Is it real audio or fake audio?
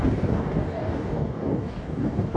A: fake